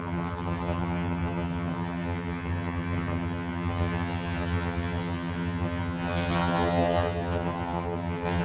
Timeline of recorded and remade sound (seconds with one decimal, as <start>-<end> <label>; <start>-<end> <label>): 0.0-8.4 remade